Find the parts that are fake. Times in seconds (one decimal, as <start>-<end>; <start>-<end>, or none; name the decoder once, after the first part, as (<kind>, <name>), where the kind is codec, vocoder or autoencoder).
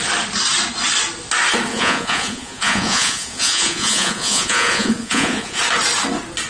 1.7-5.6 (vocoder, Vocos)